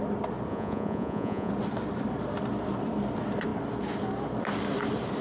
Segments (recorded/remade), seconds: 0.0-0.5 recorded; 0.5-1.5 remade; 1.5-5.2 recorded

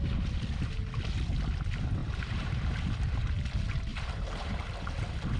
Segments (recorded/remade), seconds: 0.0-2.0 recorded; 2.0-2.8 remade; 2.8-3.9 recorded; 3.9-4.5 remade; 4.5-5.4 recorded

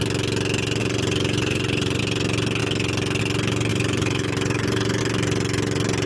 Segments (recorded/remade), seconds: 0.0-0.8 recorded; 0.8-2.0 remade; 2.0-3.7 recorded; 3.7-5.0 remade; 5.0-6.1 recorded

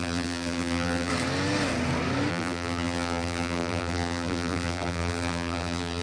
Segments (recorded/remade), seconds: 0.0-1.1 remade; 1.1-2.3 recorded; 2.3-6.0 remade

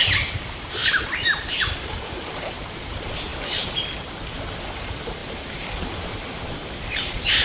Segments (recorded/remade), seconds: 0.0-3.3 remade; 3.3-4.8 recorded; 4.8-7.4 remade

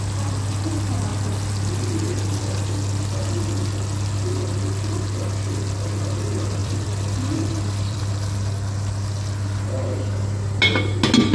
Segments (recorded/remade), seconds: 0.0-6.6 recorded; 6.6-8.1 remade; 8.1-11.3 recorded

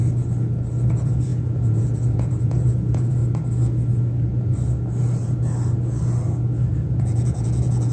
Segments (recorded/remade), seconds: 0.0-0.9 recorded; 0.9-3.2 remade; 3.2-6.9 recorded; 6.9-7.9 remade